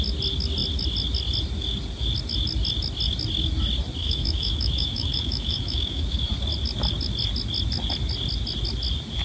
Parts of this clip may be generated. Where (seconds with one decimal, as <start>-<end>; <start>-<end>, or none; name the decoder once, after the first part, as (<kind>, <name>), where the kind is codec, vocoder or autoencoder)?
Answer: 4.0-6.3 (autoencoder, DAC-VAE)